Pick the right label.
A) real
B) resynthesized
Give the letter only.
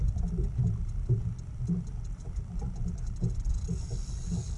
A